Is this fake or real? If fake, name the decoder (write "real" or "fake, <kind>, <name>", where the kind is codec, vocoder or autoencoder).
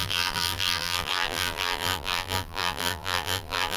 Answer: fake, vocoder, BigVGAN v2